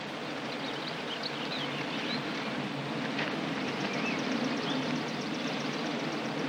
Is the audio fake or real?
real